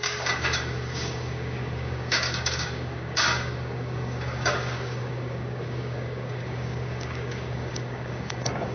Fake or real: fake